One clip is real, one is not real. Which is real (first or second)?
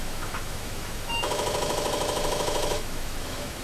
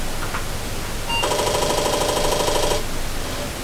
second